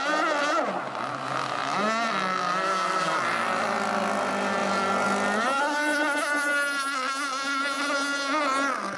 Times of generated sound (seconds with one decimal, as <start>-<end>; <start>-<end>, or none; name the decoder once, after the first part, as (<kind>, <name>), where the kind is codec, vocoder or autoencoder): none